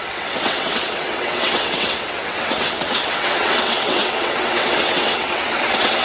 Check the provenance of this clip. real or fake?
fake